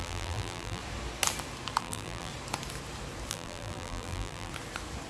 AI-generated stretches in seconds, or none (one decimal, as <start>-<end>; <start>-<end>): 0.0-0.8; 1.8-2.3; 3.3-4.5